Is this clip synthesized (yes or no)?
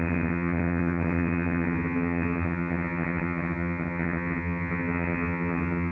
yes